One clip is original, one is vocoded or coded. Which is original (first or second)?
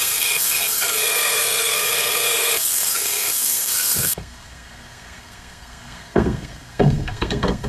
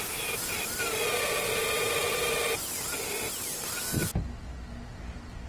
second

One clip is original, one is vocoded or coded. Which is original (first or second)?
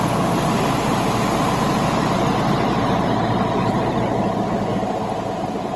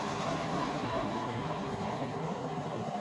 first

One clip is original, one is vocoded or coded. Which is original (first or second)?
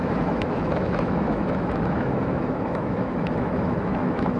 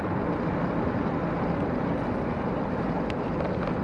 second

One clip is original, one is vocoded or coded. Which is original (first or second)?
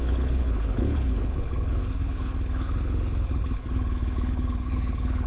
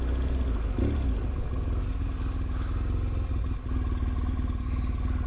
second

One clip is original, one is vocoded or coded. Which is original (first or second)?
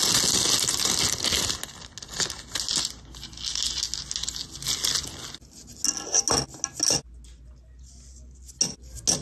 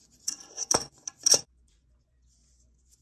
first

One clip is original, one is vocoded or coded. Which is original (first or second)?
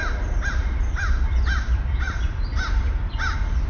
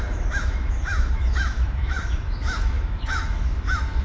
first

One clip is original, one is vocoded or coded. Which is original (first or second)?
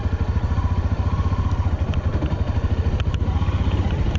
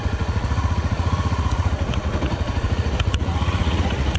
first